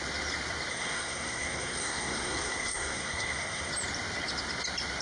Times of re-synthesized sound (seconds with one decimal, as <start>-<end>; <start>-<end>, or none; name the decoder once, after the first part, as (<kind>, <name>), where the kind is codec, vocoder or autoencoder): 0.7-3.7 (codec, SNAC)